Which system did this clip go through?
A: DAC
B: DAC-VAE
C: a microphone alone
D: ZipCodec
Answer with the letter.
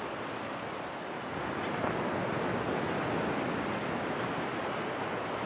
C